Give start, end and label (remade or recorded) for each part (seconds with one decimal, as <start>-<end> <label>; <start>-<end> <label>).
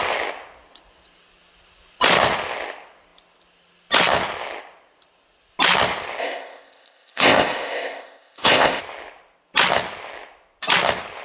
0.0-6.2 recorded; 6.2-8.8 remade; 8.8-11.2 recorded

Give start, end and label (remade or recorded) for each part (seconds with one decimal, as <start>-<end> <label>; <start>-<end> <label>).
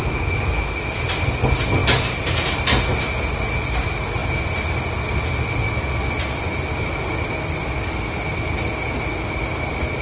0.0-10.0 recorded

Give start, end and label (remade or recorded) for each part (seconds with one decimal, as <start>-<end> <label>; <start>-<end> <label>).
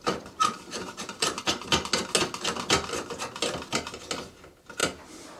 0.0-0.4 recorded; 0.4-1.4 remade; 1.4-5.4 recorded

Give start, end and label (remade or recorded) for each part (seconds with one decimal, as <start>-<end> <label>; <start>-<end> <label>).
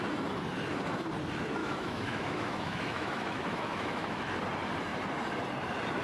0.0-1.6 recorded; 1.6-4.3 remade; 4.3-6.0 recorded